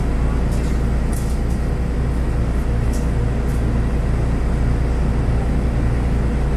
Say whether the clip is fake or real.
real